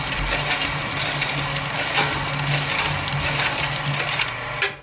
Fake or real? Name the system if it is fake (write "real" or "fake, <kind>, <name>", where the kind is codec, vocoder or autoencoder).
real